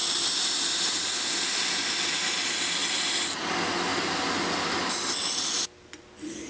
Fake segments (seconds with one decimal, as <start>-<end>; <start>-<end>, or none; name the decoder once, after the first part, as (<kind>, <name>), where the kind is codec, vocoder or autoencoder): none